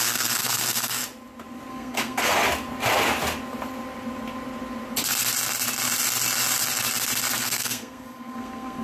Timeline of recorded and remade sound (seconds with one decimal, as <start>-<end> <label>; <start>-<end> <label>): 0.0-1.0 remade; 1.0-1.7 recorded; 1.7-2.3 remade; 2.3-7.4 recorded; 7.4-8.8 remade